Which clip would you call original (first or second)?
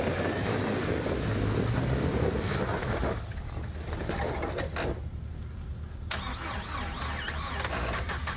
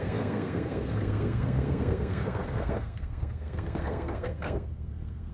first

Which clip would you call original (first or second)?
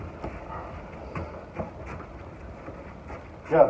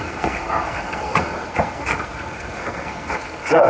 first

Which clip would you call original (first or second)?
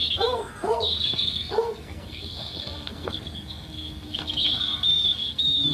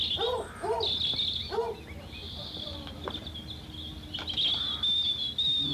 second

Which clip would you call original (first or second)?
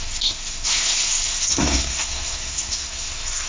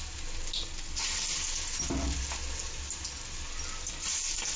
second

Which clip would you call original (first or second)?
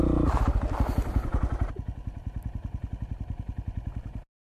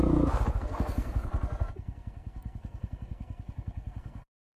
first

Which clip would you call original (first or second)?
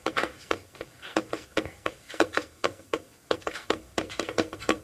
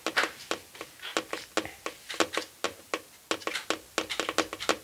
second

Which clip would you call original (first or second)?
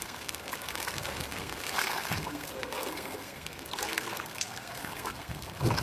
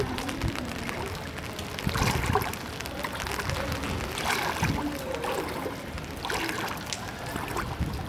second